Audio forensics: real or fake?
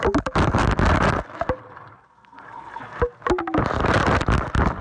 real